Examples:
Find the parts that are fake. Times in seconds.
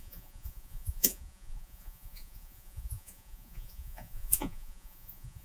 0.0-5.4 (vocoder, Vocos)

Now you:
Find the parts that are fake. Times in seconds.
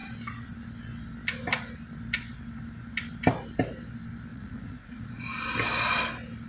4.3-5.2 (vocoder, Vocos)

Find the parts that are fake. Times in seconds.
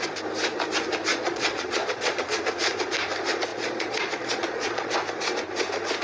1.1-2.4 (vocoder, Vocos); 3.5-4.9